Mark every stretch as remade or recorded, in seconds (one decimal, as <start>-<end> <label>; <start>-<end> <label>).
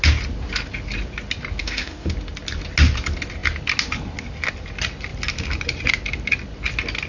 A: 0.0-1.6 recorded; 1.6-2.1 remade; 2.1-7.1 recorded